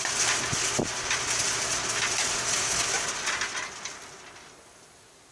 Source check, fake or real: real